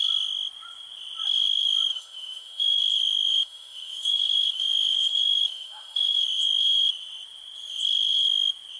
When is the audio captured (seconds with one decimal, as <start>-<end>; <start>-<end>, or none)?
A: 0.0-1.9; 2.8-3.3; 6.2-8.8